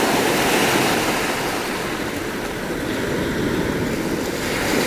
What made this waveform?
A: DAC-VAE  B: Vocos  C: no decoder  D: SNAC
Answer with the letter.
C